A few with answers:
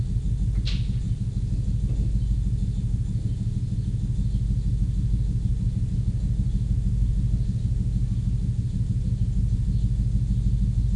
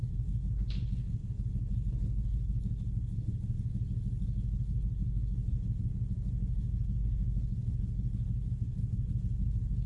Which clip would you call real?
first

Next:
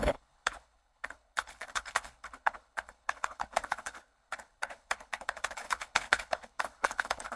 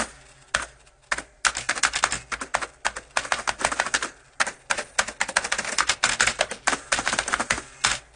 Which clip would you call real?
second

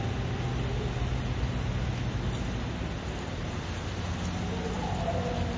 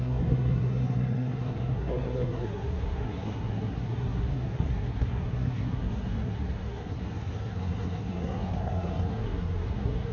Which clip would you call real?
first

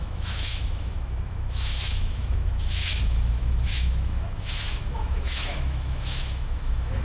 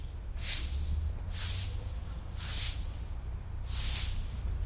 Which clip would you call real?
second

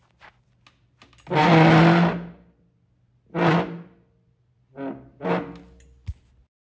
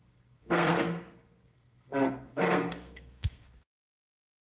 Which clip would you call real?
first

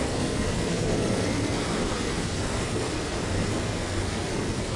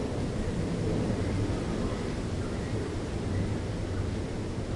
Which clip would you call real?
second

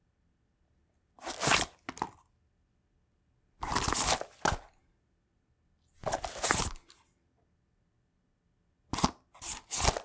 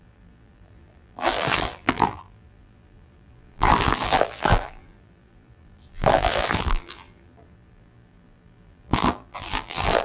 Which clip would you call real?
first